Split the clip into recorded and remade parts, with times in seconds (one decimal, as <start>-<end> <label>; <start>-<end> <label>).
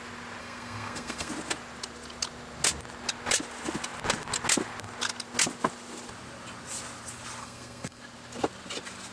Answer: 0.0-0.4 recorded; 0.4-1.3 remade; 1.3-7.4 recorded; 7.4-8.0 remade; 8.0-9.1 recorded